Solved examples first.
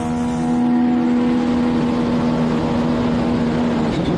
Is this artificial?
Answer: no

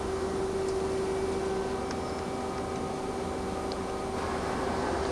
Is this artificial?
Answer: no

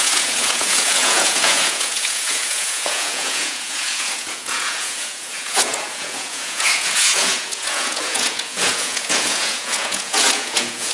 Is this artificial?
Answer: yes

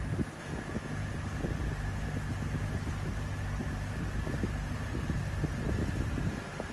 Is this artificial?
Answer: no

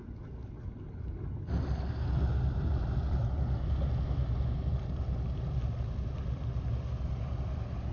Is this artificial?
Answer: no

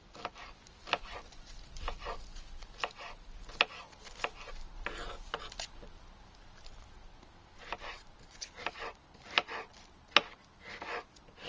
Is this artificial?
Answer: no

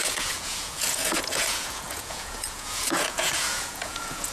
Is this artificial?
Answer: yes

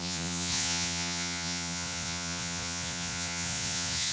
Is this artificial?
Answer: yes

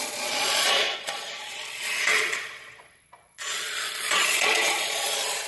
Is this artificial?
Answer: yes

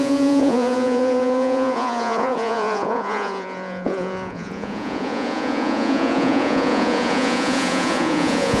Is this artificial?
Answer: yes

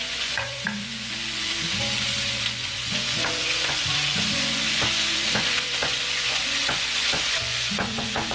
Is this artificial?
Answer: yes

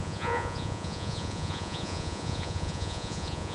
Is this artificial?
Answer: yes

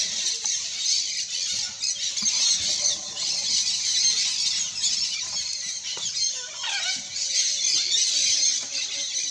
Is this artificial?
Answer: no